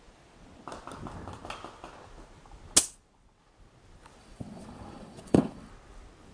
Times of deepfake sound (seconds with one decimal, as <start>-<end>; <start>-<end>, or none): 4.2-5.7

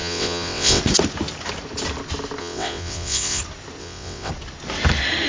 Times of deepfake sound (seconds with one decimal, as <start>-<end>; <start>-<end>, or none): 0.0-0.8; 2.4-3.4; 3.8-4.3

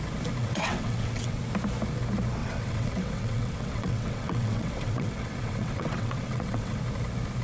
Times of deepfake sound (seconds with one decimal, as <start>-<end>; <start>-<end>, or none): 0.4-1.4; 2.4-6.8